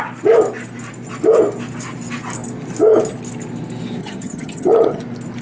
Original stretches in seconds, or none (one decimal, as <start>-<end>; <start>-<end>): 0.0-4.0; 5.0-5.4